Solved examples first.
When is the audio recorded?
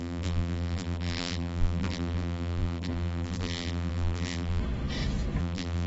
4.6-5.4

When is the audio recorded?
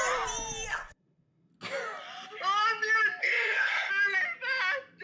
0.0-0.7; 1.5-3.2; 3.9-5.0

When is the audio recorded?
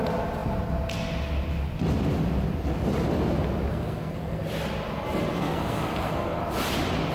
0.0-3.7; 4.4-5.4; 6.4-7.1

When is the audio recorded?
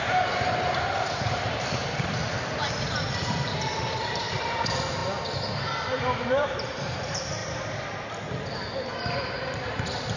1.8-3.1; 5.0-6.0; 7.4-9.3